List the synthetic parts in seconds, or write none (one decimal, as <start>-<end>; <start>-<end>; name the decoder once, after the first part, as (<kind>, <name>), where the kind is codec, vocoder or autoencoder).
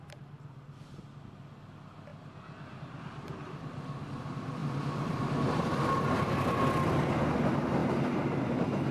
4.6-5.2 (vocoder, BigVGAN v2); 7.8-8.5